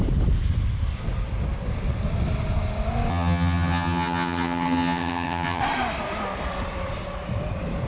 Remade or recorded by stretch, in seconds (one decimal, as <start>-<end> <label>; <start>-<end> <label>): 0.0-3.1 recorded; 3.1-5.6 remade; 5.6-7.9 recorded